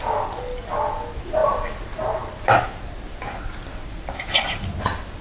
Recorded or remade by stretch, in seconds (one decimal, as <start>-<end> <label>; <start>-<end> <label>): 0.0-5.2 recorded